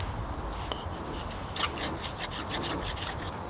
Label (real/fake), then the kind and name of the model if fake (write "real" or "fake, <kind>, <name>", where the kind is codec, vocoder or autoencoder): real